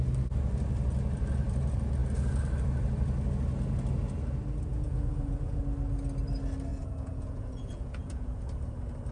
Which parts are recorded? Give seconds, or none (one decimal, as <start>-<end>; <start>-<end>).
0.0-4.7; 5.6-6.7; 8.4-9.1